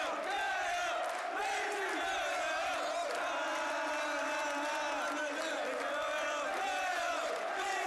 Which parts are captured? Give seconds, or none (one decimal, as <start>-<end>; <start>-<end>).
0.0-6.9